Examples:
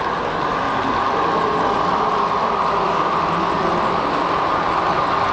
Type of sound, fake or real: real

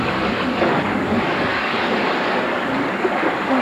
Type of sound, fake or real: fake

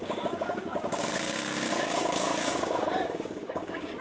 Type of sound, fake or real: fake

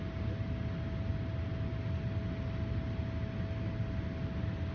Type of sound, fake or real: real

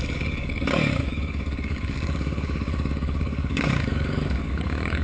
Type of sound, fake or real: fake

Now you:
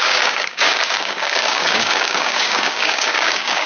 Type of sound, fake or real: fake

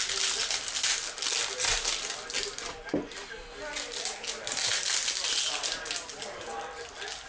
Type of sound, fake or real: real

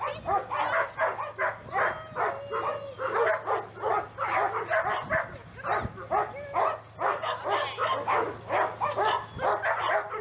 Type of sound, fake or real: real